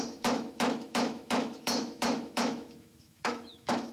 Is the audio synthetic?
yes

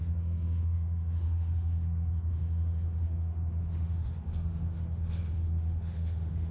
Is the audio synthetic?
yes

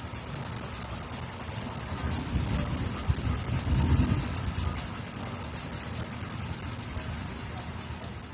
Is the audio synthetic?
no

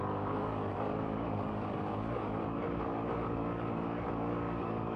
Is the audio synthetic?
yes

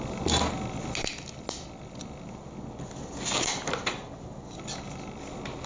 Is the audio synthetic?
no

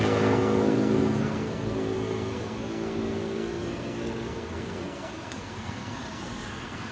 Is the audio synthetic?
yes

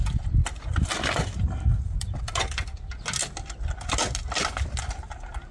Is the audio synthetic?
no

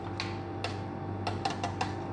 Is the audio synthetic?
no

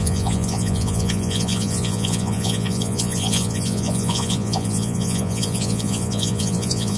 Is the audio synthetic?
yes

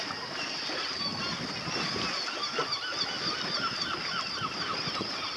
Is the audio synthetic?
no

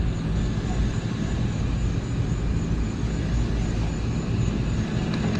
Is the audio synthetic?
no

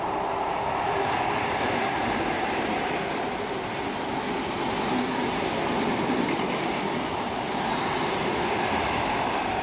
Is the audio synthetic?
yes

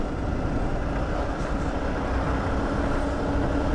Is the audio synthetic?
no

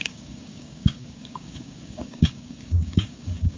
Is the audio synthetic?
yes